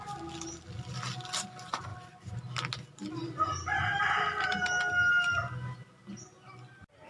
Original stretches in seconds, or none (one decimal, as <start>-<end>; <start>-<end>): 0.0-7.1